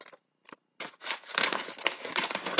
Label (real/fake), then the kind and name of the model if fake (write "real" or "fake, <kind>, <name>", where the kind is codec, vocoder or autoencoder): real